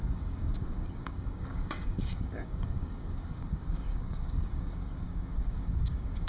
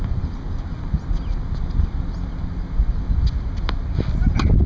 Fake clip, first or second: first